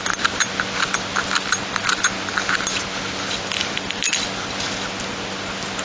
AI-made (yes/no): no